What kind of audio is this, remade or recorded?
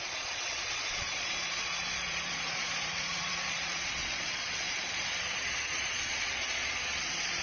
remade